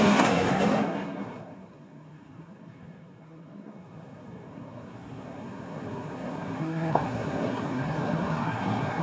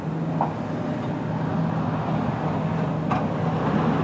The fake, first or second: first